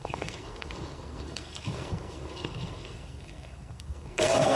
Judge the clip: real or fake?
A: fake